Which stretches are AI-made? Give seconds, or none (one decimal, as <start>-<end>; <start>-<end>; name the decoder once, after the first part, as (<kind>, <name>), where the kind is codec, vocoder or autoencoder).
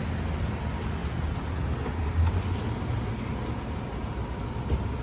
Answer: none